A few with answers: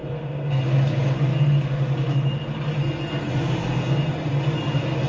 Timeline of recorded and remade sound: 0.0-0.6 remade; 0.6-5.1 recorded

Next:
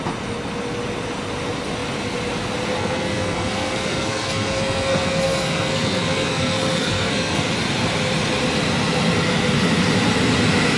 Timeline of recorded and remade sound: 0.0-2.8 recorded; 2.8-7.5 remade; 7.5-10.8 recorded